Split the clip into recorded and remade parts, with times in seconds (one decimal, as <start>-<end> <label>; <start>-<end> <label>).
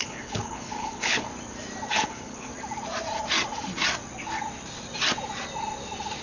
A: 0.0-1.3 remade; 1.3-1.9 recorded; 1.9-2.5 remade; 2.5-6.2 recorded